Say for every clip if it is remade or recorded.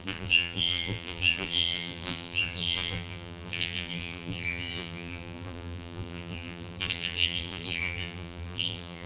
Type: remade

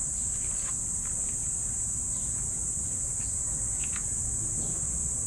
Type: recorded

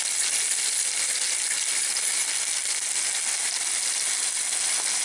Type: recorded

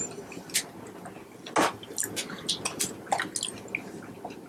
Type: recorded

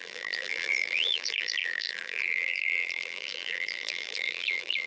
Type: remade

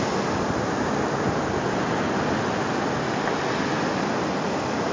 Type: recorded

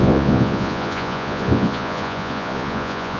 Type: remade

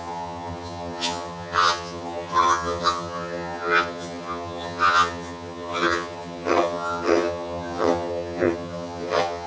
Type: remade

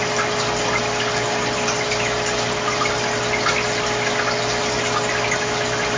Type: recorded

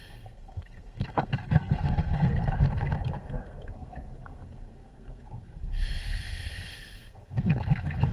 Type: remade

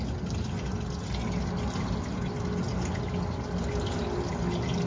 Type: recorded